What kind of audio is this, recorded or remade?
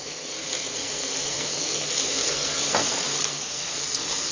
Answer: remade